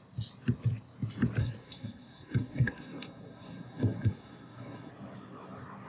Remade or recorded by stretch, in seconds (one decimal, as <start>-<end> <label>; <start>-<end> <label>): 0.0-1.4 recorded; 1.4-4.9 remade; 4.9-5.9 recorded